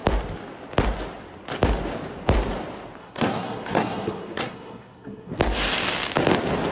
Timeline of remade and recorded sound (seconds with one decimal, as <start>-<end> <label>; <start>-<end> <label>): 0.0-3.0 recorded; 3.0-5.3 remade; 5.3-6.7 recorded